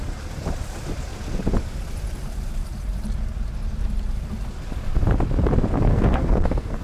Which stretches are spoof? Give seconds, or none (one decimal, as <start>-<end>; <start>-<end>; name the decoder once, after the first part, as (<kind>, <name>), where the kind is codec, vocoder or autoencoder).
5.9-6.8 (codec, SNAC)